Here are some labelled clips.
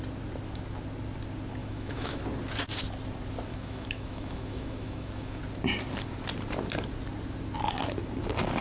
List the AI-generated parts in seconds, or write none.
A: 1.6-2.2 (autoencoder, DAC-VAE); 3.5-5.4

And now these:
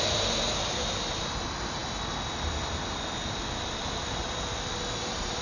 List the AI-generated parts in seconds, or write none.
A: none

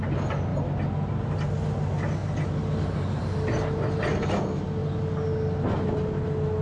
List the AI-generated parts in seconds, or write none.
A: none

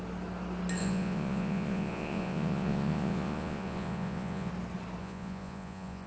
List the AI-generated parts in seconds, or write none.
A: 0.8-4.5 (vocoder, Vocos); 5.0-6.1

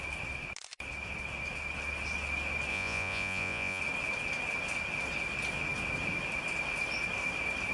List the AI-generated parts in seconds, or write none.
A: 2.7-3.8 (vocoder, Vocos)

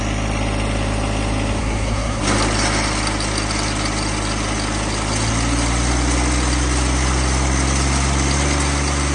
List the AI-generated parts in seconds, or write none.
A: 1.6-2.2 (codec, SNAC)

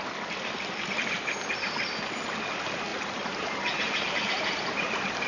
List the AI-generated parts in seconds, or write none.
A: 2.9-5.3 (vocoder, BigVGAN v2)